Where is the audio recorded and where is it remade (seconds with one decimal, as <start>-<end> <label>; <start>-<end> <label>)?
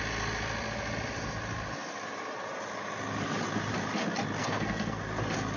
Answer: 0.0-4.4 recorded; 4.4-5.0 remade; 5.0-5.6 recorded